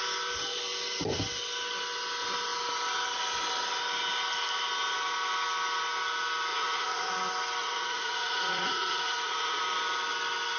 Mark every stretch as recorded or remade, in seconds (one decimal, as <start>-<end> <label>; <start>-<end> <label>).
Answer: 0.0-6.5 recorded; 6.5-7.1 remade; 7.1-7.6 recorded; 7.6-9.6 remade; 9.6-10.6 recorded